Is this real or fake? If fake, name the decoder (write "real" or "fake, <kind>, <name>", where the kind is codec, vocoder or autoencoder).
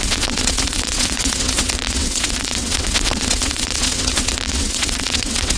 fake, vocoder, WaveNeXt